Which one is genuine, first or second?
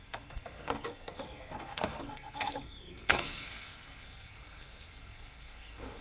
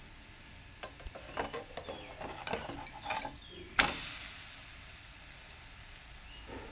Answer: second